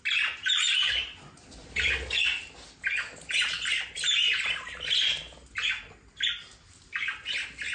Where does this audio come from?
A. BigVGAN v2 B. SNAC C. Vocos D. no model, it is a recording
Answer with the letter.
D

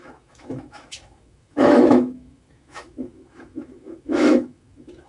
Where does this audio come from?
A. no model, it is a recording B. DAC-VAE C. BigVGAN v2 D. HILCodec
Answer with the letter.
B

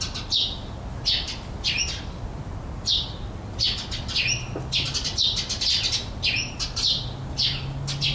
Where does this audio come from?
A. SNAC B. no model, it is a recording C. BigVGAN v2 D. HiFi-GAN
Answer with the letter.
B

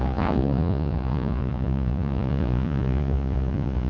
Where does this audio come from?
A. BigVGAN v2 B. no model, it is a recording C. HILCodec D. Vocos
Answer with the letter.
D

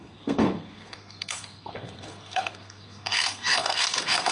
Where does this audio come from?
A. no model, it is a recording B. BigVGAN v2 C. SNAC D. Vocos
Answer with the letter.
C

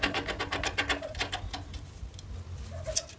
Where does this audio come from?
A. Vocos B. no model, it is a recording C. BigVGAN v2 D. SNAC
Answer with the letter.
B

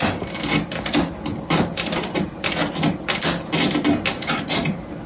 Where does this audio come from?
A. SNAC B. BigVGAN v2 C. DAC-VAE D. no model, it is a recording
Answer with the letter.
D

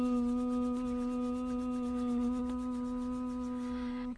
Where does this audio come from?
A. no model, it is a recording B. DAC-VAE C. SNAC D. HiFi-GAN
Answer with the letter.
A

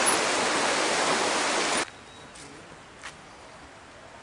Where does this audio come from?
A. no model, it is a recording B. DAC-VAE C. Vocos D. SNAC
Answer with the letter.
A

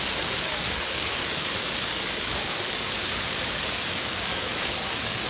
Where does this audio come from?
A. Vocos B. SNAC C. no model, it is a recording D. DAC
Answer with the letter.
D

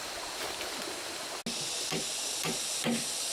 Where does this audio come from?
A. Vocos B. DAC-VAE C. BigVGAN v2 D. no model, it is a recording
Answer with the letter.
D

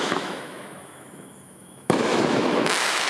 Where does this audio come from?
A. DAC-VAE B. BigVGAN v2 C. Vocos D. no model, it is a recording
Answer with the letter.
A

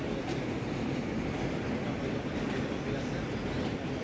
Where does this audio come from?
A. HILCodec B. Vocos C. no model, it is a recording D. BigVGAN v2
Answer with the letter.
C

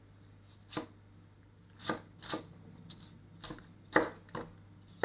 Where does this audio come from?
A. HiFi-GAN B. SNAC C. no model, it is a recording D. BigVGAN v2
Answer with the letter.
C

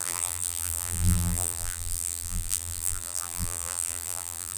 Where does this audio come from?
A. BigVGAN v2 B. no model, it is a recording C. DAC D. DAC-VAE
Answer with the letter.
A